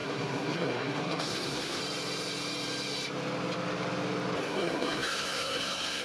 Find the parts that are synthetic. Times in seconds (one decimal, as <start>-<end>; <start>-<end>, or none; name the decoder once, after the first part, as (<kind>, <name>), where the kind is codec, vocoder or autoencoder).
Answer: 0.0-1.8 (codec, SNAC); 4.4-6.0